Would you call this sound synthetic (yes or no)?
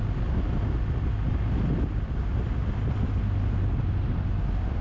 no